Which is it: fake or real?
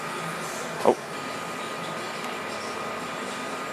real